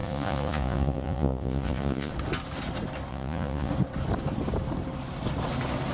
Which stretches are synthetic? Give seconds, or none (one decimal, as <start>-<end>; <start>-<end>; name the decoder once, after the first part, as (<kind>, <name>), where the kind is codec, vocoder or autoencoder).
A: 0.0-2.1 (vocoder, Vocos); 3.1-3.7